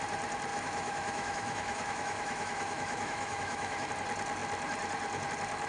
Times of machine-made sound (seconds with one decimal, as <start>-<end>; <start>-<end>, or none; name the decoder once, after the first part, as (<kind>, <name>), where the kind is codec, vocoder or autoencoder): 0.5-3.9 (autoencoder, DAC-VAE)